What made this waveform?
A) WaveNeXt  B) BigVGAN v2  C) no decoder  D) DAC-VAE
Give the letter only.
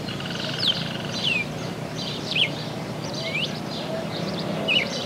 B